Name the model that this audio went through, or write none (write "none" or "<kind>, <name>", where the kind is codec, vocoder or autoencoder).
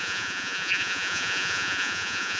vocoder, Vocos